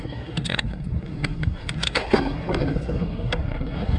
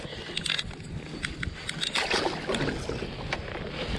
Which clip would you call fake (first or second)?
first